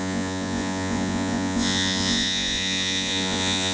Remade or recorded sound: remade